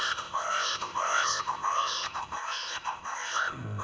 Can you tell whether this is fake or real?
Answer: fake